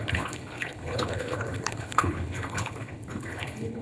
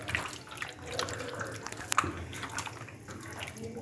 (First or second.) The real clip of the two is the second